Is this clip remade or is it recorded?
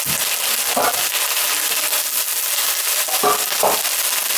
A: recorded